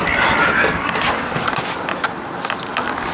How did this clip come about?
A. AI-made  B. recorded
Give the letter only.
B